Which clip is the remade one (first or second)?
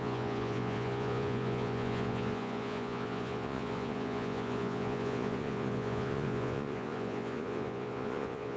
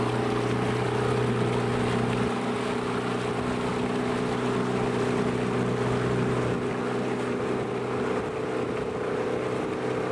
first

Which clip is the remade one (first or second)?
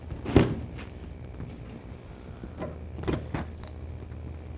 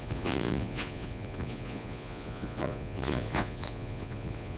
second